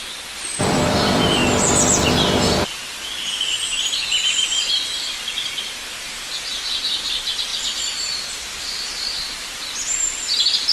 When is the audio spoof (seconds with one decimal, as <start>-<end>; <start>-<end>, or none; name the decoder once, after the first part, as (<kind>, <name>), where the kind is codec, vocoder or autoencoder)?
0.0-1.4 (vocoder, BigVGAN v2); 5.9-10.7